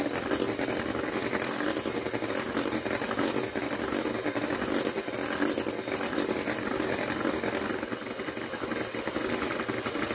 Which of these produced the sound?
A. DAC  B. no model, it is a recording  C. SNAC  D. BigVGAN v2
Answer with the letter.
B